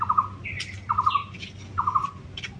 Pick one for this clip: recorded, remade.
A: recorded